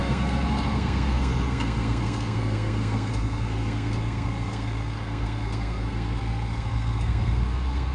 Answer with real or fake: fake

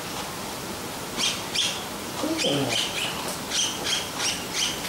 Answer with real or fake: real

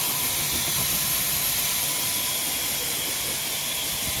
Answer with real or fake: real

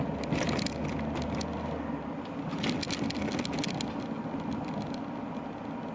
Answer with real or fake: real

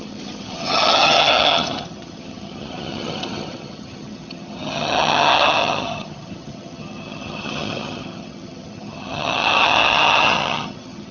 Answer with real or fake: fake